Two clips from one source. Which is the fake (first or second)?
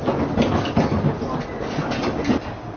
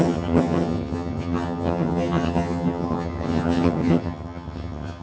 second